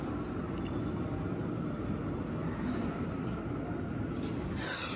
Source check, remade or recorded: recorded